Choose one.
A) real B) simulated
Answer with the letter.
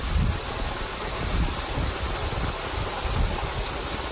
A